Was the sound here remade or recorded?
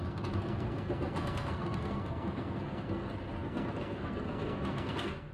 remade